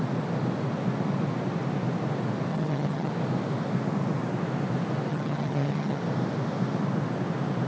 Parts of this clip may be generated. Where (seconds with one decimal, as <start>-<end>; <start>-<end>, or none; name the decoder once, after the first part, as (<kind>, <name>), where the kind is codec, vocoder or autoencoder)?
2.5-3.1 (vocoder, HiFi-GAN); 5.1-6.0